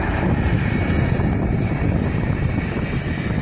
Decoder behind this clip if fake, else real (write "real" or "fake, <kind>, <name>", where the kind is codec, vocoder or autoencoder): real